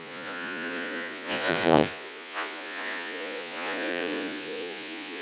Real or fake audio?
fake